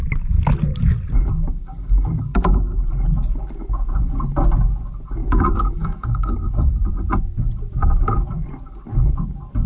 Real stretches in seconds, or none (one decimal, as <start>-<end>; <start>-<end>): 0.0-1.5; 2.6-5.2; 6.9-9.7